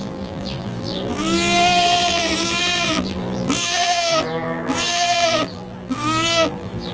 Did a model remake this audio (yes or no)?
yes